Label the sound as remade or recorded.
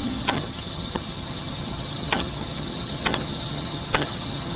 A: remade